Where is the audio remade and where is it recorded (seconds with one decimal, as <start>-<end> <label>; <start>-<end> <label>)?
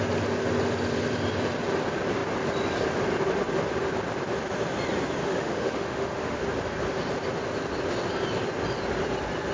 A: 0.0-5.2 recorded; 5.2-6.4 remade; 6.4-9.5 recorded